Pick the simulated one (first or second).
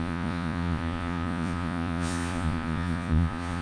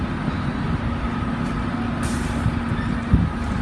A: first